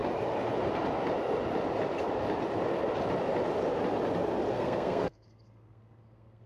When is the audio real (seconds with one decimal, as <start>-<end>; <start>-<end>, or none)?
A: 0.0-4.5